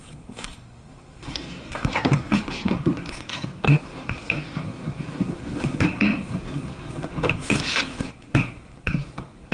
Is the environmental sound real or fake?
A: fake